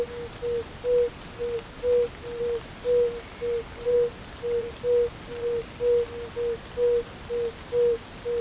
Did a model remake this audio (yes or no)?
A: no